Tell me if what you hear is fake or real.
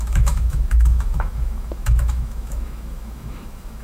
fake